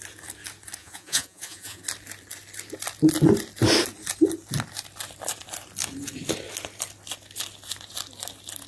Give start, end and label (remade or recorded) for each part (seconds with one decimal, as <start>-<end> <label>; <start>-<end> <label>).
0.0-0.8 recorded; 0.8-1.8 remade; 1.8-8.7 recorded

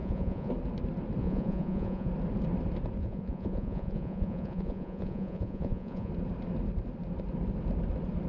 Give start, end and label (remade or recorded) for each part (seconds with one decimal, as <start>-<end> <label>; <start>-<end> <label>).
0.0-0.5 remade; 0.5-1.2 recorded; 1.2-2.1 remade; 2.1-3.0 recorded; 3.0-6.1 remade; 6.1-8.3 recorded

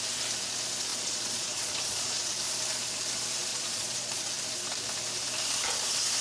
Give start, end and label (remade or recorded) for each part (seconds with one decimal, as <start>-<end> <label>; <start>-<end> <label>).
0.0-0.9 recorded; 0.9-2.3 remade; 2.3-3.5 recorded; 3.5-4.3 remade; 4.3-6.2 recorded

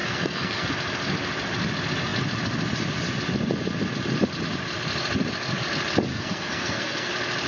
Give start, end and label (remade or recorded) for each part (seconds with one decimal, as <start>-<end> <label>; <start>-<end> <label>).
0.0-0.7 remade; 0.7-6.1 recorded; 6.1-7.1 remade; 7.1-7.5 recorded

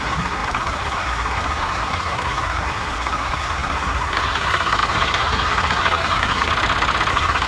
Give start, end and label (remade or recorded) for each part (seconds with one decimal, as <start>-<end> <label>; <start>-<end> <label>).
0.0-6.5 remade; 6.5-7.1 recorded; 7.1-7.5 remade

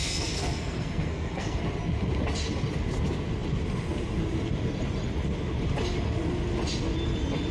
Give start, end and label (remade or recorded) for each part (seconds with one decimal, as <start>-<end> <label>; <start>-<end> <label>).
0.0-1.6 remade; 1.6-7.5 recorded

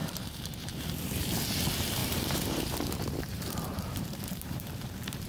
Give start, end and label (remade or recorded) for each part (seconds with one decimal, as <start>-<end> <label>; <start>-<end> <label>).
0.0-0.8 remade; 0.8-2.0 recorded; 2.0-5.3 remade

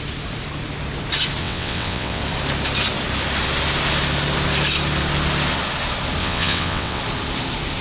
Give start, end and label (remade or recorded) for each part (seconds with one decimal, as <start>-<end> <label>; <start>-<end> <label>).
0.0-1.4 recorded; 1.4-2.2 remade; 2.2-6.2 recorded; 6.2-7.0 remade; 7.0-7.8 recorded